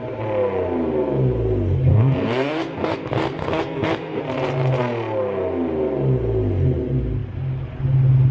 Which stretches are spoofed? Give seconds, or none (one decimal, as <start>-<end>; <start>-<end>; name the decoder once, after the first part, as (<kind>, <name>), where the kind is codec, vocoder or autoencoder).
1.9-4.2 (codec, SNAC)